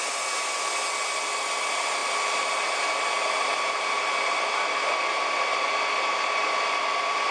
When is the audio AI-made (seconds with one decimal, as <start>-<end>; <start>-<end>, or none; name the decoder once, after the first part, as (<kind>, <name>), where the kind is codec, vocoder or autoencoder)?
none